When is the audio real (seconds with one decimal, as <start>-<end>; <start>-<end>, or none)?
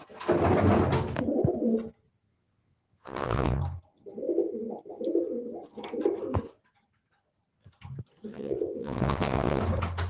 0.0-2.3; 3.6-8.3; 9.6-10.1